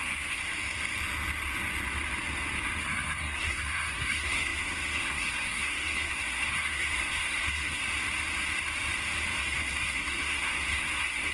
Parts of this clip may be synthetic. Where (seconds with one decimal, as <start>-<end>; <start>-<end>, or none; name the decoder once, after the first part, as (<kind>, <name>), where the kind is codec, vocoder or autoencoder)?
0.0-0.4 (codec, SNAC); 2.8-7.8; 9.4-11.3